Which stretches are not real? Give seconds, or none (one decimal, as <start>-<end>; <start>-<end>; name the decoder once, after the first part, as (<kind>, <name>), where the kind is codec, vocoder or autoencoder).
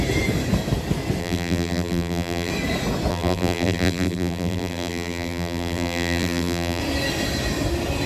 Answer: 1.2-2.5 (vocoder, BigVGAN v2); 3.1-6.8